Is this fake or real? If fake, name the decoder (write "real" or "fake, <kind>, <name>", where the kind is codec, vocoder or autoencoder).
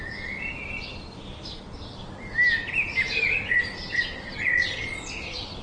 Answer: real